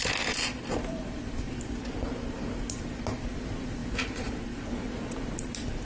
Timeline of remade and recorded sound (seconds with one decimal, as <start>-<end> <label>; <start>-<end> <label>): 0.0-5.8 recorded